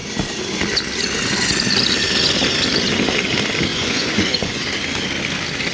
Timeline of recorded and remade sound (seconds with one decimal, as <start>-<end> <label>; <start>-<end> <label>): 0.0-3.7 recorded; 3.7-4.6 remade; 4.6-5.7 recorded